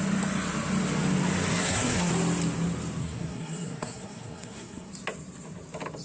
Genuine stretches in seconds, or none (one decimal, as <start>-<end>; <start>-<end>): 0.0-1.5; 2.1-3.0; 4.9-6.0